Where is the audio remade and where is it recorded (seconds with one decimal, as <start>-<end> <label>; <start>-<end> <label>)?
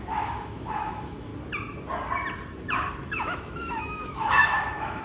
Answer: 0.0-1.3 remade; 1.3-2.9 recorded; 2.9-5.0 remade